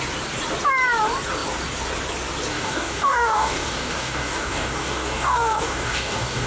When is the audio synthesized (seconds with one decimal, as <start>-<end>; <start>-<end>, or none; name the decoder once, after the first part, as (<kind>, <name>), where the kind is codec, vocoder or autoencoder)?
2.5-6.5 (codec, DAC)